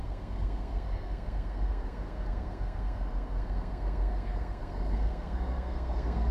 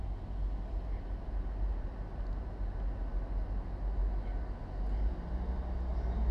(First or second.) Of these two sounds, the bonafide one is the second